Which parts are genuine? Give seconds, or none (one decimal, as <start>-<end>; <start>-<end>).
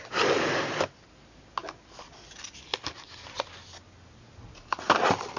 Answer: 0.0-5.4